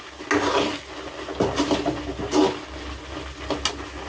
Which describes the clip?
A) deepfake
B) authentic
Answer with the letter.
B